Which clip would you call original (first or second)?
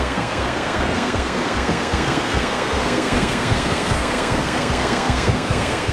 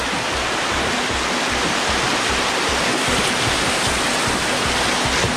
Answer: second